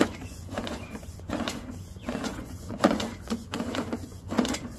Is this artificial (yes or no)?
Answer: yes